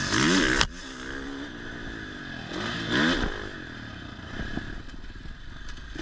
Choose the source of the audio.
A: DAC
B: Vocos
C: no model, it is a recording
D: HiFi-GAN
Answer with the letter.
C